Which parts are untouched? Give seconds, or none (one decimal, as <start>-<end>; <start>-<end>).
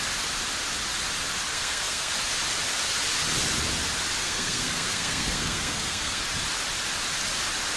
0.0-1.5; 2.1-4.2; 6.2-7.8